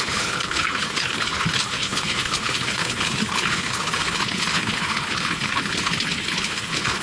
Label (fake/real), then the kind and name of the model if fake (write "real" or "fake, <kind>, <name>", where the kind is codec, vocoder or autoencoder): fake, codec, HILCodec